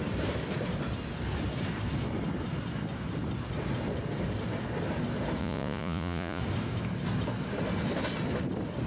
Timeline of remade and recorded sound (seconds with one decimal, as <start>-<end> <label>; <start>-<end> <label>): 0.0-5.4 recorded; 5.4-6.4 remade; 6.4-8.9 recorded